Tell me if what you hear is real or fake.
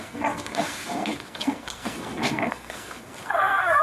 fake